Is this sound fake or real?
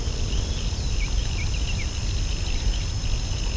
real